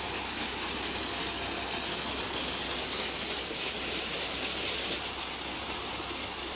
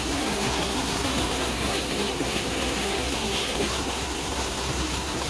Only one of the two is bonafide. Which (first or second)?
first